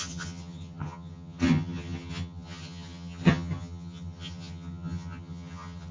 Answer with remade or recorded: remade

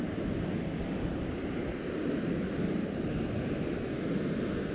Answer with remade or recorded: recorded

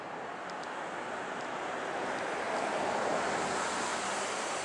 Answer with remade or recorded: recorded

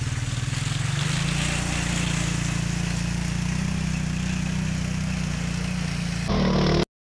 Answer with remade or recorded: recorded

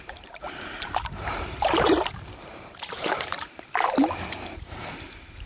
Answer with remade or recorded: remade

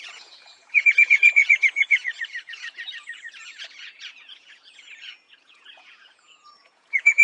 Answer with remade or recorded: remade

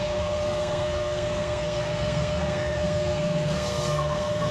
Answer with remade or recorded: remade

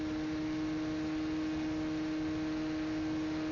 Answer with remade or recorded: recorded